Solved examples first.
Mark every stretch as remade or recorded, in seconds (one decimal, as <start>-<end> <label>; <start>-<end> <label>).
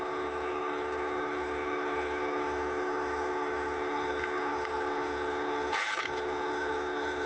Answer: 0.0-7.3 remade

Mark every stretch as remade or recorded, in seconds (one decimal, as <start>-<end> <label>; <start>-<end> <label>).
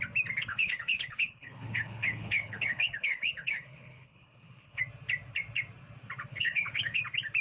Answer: 0.0-0.5 recorded; 0.5-4.8 remade; 4.8-6.3 recorded; 6.3-7.0 remade; 7.0-7.4 recorded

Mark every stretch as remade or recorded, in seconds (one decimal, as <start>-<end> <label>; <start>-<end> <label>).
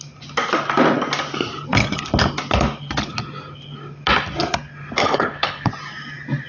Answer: 0.0-5.0 recorded; 5.0-5.7 remade; 5.7-6.5 recorded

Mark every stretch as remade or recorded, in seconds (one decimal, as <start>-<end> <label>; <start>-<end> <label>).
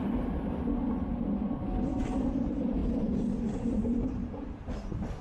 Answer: 0.0-5.2 recorded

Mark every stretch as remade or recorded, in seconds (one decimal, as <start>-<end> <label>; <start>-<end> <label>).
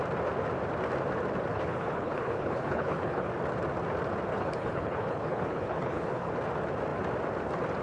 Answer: 0.0-1.5 recorded; 1.5-3.3 remade; 3.3-4.3 recorded; 4.3-6.3 remade; 6.3-7.8 recorded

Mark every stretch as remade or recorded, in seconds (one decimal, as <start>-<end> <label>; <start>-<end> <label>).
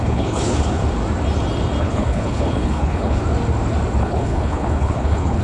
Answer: 0.0-0.8 remade; 0.8-1.8 recorded; 1.8-3.2 remade; 3.2-4.0 recorded; 4.0-5.4 remade